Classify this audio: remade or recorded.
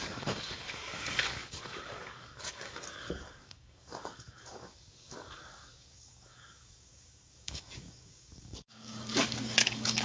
remade